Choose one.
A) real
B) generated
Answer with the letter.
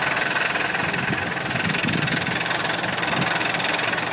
B